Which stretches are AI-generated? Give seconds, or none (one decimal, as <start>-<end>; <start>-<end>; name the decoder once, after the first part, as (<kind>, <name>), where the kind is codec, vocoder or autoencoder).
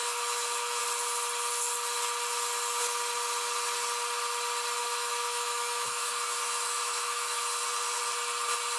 0.0-0.8 (autoencoder, DAC-VAE); 4.8-7.5